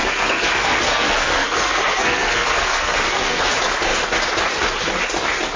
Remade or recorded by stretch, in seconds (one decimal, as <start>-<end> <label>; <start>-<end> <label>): 0.0-3.4 remade; 3.4-5.6 recorded